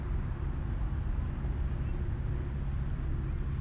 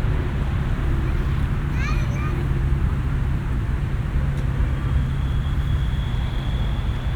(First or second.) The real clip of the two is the first